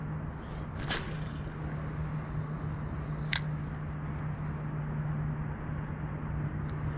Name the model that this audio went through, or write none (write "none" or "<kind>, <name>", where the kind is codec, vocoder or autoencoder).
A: none